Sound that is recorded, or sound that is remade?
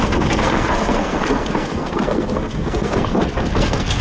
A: remade